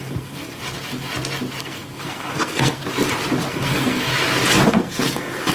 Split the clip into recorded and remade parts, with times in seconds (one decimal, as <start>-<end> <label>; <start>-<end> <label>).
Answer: 0.0-0.6 remade; 0.6-1.6 recorded; 1.6-2.8 remade; 2.8-3.5 recorded; 3.5-4.1 remade; 4.1-4.7 recorded; 4.7-5.5 remade